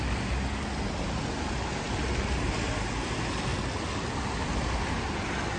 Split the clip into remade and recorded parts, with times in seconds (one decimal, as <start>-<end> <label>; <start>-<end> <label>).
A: 0.0-5.6 recorded